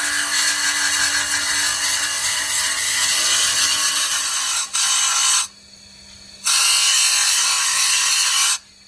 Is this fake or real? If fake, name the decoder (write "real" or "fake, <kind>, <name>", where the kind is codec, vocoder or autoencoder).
real